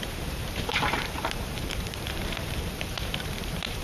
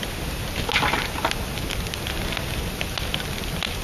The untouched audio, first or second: second